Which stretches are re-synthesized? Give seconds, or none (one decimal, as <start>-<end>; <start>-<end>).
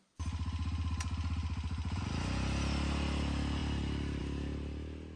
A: none